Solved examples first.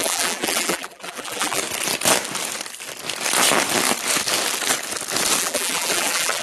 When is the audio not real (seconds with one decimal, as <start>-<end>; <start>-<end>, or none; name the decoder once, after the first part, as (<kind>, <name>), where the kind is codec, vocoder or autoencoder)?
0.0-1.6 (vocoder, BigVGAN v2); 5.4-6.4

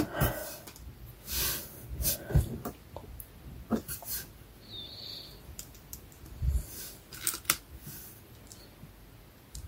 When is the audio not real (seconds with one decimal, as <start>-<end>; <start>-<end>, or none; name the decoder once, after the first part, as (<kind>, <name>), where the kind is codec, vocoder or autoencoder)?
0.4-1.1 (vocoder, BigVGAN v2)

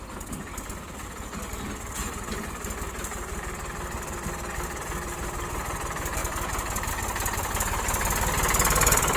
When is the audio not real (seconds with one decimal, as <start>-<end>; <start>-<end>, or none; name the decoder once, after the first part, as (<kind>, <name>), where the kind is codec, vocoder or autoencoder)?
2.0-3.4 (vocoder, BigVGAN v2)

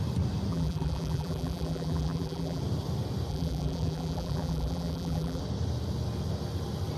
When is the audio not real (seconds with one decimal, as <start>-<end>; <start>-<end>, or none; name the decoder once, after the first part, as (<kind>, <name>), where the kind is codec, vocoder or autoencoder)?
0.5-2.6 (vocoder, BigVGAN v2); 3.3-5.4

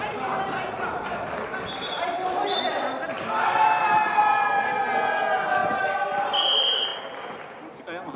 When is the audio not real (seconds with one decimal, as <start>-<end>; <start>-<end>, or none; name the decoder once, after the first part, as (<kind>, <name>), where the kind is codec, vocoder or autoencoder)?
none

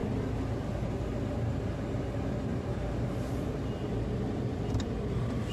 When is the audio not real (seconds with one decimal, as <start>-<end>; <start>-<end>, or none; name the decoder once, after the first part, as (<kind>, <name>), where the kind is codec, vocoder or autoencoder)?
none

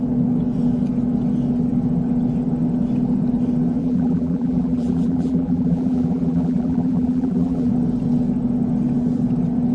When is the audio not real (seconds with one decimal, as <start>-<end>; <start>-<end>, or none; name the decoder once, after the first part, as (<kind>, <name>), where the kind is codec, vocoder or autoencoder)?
3.8-7.7 (vocoder, BigVGAN v2)

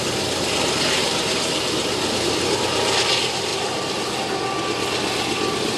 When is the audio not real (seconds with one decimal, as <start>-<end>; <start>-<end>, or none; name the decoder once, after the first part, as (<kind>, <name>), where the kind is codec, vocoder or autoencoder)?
1.0-2.6 (vocoder, BigVGAN v2); 3.5-4.2